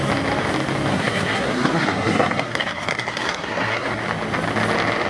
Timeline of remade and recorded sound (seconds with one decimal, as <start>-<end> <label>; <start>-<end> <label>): 0.0-0.9 recorded; 0.9-4.0 remade; 4.0-5.1 recorded